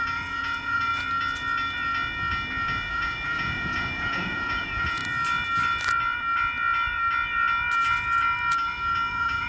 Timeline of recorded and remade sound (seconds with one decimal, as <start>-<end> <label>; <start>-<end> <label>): 0.0-0.9 remade; 0.9-2.9 recorded; 2.9-5.0 remade; 5.0-9.1 recorded; 9.1-9.5 remade